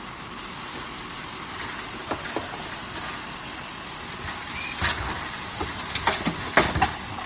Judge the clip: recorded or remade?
recorded